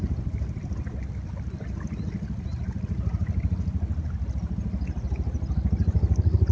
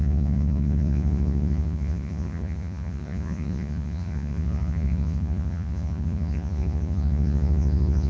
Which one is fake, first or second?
second